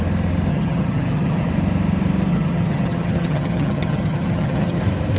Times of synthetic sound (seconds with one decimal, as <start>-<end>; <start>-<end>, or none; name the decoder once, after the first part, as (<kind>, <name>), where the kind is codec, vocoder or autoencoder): 0.5-1.5 (vocoder, HiFi-GAN); 2.3-4.8